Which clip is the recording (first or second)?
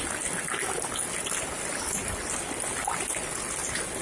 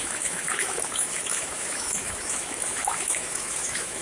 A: first